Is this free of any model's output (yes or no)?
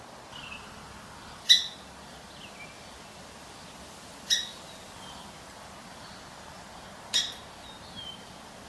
yes